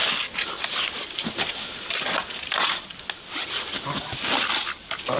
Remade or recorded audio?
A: recorded